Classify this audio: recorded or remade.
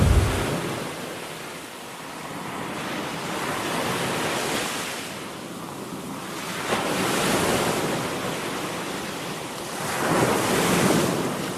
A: recorded